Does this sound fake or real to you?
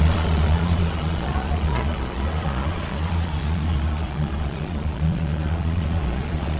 fake